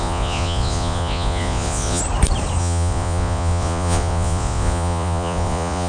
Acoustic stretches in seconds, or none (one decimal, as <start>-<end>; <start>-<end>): 2.0-2.6